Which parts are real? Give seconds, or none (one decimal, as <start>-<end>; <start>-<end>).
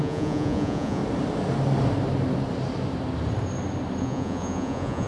1.0-4.0